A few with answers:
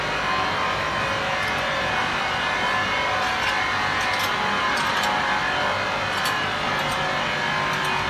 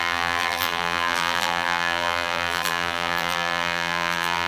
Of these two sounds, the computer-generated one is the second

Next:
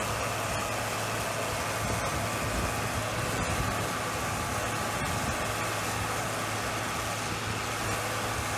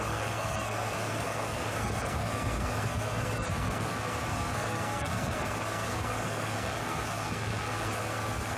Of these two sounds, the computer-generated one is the second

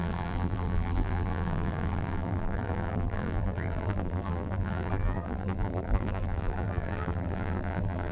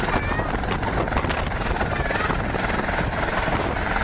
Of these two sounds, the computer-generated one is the first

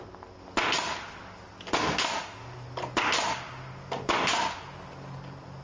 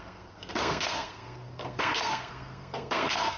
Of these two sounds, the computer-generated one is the second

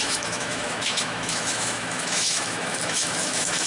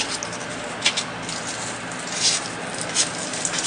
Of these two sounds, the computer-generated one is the first